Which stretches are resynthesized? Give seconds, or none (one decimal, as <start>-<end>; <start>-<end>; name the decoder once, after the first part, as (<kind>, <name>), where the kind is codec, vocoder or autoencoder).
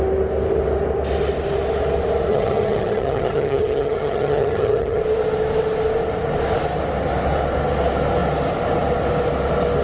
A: 2.3-5.0 (vocoder, HiFi-GAN)